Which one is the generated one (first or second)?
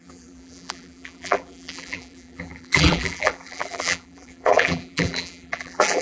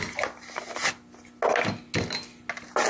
first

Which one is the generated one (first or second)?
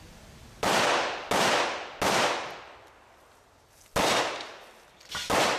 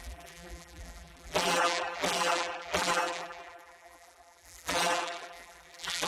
second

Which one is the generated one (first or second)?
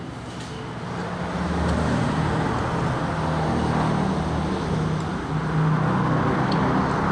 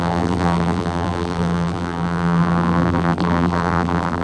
second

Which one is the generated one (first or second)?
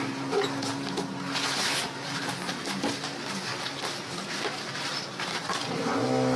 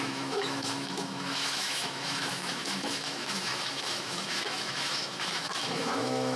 second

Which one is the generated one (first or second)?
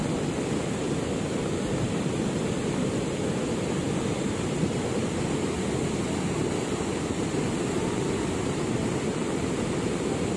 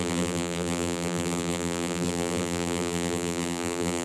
second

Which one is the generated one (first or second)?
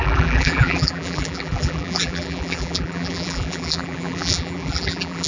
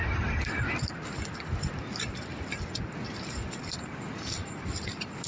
first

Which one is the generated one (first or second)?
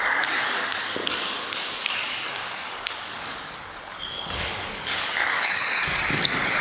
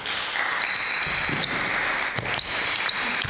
first